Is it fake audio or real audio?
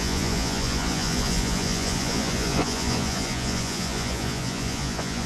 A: fake